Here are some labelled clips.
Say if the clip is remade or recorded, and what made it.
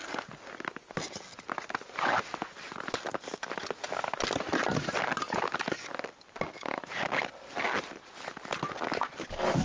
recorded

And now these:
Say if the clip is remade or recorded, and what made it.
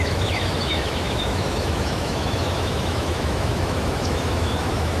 remade, autoencoder, DAC-VAE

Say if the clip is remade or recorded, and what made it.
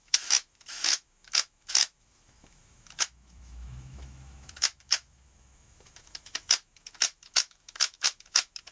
remade, autoencoder, DAC-VAE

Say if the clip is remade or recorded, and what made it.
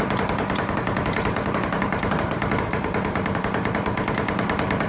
remade, vocoder, BigVGAN v2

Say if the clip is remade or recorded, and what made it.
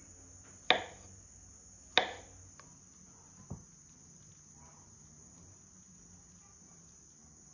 recorded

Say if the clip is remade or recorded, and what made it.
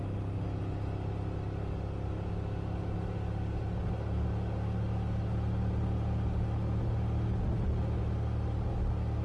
recorded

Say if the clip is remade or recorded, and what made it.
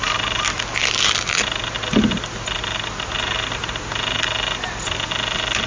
recorded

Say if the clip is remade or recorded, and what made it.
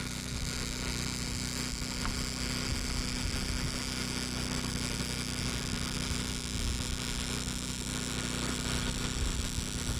recorded